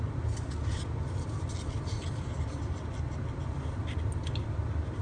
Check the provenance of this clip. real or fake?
real